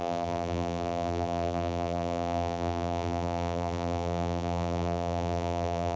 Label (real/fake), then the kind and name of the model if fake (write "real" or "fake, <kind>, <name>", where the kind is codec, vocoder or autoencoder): fake, vocoder, BigVGAN v2